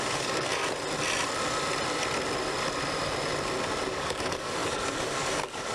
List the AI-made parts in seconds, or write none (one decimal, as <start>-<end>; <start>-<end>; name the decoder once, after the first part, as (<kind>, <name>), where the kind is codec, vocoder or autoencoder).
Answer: 0.0-0.5 (codec, DAC); 3.9-5.7